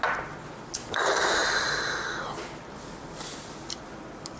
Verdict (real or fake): real